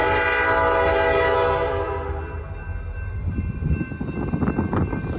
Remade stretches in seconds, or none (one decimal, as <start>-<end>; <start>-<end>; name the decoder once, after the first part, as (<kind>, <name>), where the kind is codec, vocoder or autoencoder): none